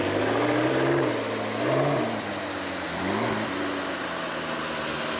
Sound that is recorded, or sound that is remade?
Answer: recorded